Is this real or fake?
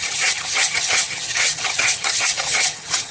fake